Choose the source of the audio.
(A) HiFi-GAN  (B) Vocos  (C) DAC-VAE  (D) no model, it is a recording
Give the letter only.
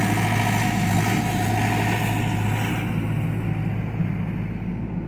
D